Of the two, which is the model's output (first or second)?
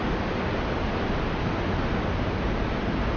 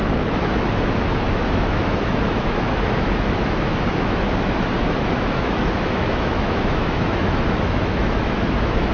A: second